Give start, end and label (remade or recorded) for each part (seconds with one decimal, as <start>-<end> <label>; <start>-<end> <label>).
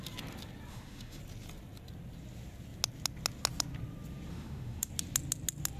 0.0-0.7 recorded; 0.7-1.2 remade; 1.2-4.3 recorded; 4.3-4.9 remade; 4.9-5.8 recorded